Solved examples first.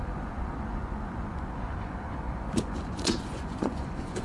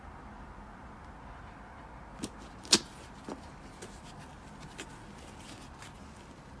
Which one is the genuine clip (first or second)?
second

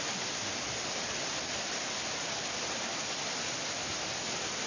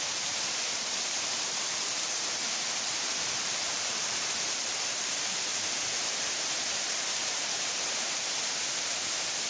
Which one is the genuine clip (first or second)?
first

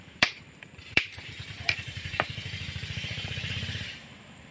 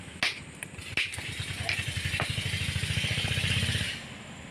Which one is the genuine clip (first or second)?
second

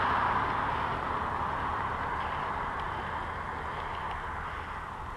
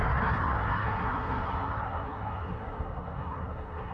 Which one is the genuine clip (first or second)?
first